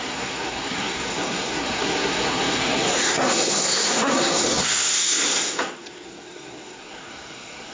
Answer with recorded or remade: remade